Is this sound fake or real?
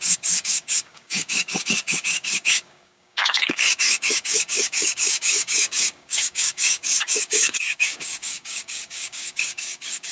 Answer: fake